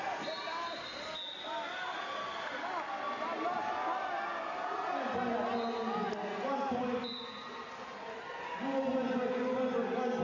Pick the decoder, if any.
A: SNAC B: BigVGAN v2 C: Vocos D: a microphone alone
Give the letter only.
D